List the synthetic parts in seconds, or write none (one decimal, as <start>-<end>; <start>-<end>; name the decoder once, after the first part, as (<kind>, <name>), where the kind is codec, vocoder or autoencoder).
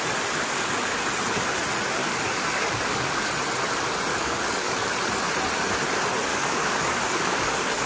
2.0-3.3 (codec, DAC); 4.1-4.9; 6.3-7.9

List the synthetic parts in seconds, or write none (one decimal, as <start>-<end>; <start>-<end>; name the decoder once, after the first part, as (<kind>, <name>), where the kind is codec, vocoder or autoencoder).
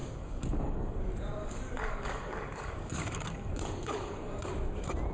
0.0-1.0 (codec, DAC); 1.4-4.5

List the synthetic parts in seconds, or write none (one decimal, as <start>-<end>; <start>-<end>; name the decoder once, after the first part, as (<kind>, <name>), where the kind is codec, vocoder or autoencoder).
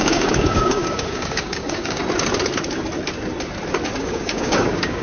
0.0-2.0 (codec, DAC); 4.0-5.0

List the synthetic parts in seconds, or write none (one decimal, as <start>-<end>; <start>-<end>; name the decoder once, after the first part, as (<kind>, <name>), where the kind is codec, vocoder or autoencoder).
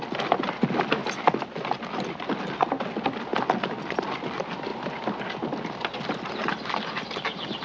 none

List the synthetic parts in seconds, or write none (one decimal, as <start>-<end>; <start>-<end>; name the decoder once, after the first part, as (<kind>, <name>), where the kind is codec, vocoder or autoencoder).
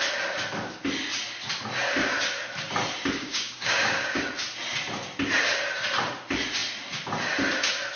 3.2-4.2 (codec, DAC)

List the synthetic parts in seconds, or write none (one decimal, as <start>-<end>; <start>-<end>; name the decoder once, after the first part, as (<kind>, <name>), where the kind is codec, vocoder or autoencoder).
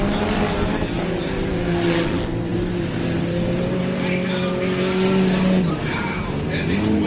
none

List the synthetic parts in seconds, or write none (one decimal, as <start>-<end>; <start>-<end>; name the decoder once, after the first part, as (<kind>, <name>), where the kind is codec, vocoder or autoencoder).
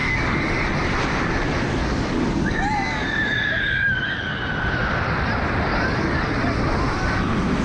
0.0-0.7 (codec, DAC); 1.8-4.4; 5.7-6.3